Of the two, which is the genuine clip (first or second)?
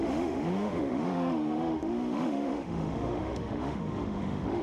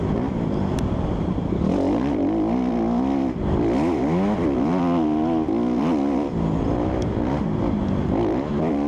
second